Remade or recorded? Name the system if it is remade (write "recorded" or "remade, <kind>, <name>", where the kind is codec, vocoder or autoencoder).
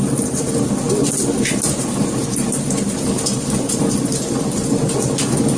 recorded